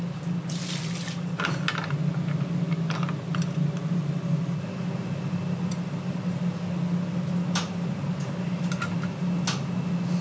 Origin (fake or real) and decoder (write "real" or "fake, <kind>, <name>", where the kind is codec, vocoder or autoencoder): real